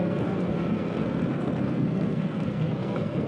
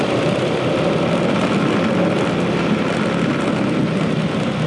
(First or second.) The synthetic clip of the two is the first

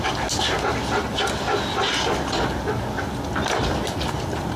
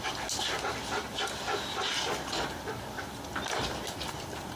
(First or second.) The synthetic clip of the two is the second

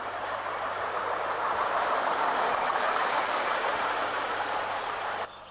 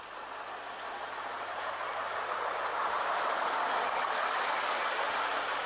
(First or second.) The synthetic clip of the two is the first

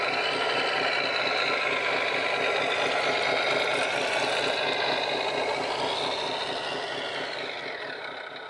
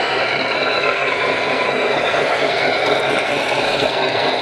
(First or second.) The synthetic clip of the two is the second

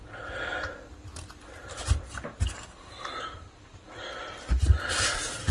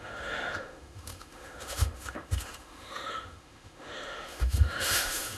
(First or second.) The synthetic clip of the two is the second